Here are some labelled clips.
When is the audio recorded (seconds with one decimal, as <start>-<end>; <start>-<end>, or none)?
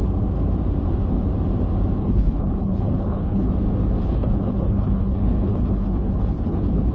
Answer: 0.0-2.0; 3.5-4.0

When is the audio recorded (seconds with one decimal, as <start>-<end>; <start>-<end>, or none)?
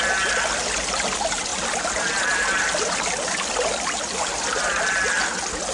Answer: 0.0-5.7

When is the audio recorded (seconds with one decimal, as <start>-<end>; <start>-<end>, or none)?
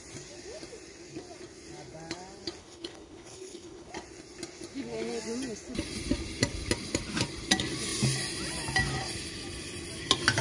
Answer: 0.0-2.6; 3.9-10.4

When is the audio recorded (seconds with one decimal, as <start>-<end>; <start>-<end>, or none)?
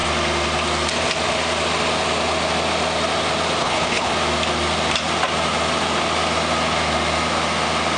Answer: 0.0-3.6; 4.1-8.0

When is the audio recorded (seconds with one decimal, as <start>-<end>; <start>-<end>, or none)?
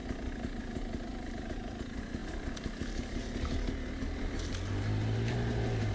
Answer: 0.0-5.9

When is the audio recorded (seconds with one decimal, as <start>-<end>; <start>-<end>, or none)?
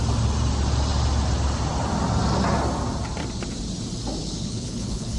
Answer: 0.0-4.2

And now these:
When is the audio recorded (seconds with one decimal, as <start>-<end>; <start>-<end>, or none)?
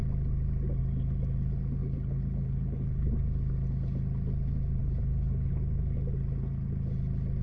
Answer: 0.0-1.8; 3.1-4.8; 5.5-7.4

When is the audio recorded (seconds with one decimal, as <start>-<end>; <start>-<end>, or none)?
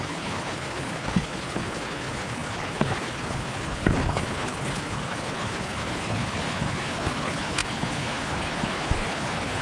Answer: none